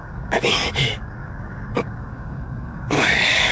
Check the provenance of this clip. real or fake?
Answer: fake